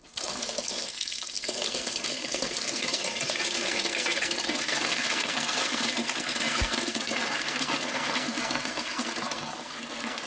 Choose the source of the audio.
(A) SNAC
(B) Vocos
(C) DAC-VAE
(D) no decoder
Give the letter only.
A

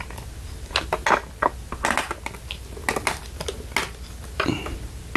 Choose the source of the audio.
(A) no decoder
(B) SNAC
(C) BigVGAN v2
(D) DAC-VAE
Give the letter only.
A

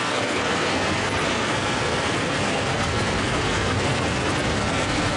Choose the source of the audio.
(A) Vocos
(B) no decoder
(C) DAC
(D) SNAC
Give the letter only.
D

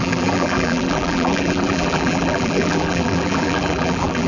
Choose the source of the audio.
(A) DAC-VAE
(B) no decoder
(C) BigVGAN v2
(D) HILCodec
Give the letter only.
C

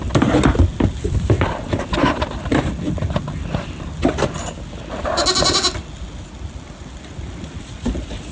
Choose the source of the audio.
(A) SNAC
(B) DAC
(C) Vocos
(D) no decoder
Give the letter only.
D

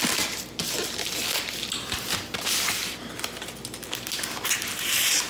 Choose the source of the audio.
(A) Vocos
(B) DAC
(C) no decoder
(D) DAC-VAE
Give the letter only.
C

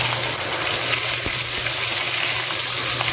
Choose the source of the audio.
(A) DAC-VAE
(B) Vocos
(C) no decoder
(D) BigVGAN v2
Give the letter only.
C